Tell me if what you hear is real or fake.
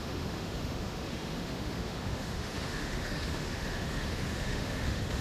fake